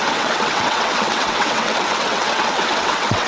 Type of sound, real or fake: fake